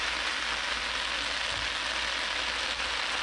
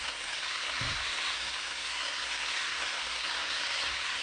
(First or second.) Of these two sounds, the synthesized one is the second